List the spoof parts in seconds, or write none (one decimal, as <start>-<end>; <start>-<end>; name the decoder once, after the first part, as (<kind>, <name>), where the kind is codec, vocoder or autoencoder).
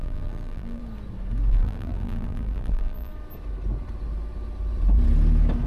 0.0-0.8 (vocoder, BigVGAN v2); 1.5-3.1